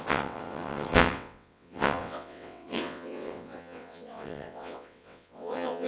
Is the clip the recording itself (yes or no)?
no